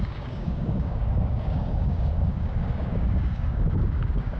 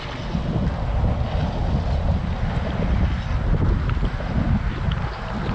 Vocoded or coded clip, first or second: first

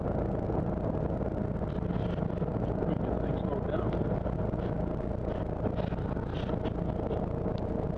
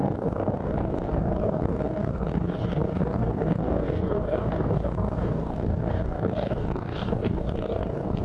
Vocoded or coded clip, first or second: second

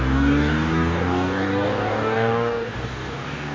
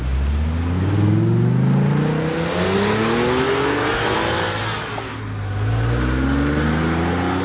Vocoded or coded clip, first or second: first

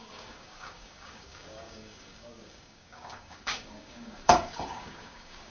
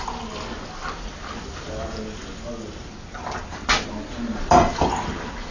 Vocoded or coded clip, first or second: first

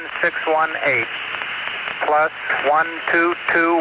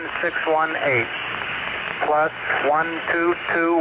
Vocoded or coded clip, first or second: second